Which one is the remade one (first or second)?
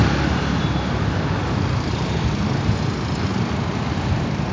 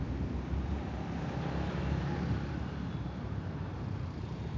second